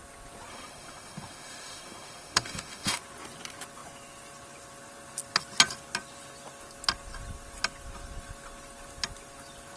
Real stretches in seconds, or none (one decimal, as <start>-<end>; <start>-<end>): 0.0-0.5; 3.0-9.8